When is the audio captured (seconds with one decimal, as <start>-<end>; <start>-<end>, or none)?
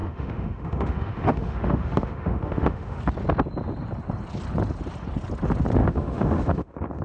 3.0-5.8